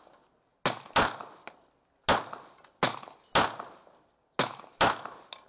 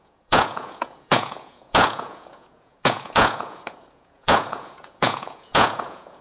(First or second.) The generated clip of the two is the second